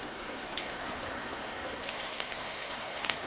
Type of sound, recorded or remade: remade